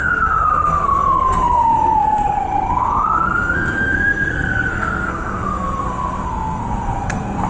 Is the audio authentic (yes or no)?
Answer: no